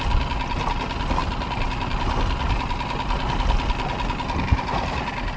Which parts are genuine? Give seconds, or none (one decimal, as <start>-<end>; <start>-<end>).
0.0-5.4